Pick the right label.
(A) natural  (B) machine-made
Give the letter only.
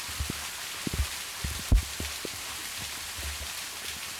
A